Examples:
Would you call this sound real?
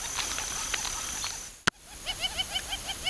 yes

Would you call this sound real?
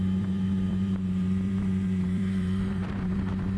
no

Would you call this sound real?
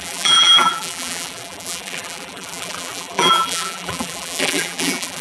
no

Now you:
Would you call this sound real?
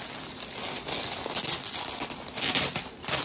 yes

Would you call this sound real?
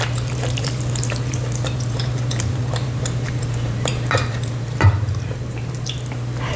no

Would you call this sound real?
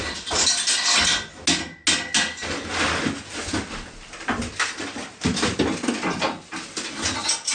yes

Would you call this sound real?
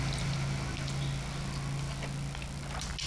yes